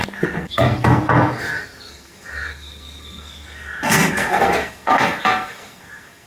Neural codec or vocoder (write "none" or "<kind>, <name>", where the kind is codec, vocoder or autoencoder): codec, SNAC